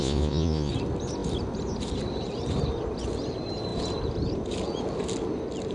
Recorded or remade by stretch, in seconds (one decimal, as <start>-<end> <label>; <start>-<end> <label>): 0.0-0.7 remade; 0.7-5.7 recorded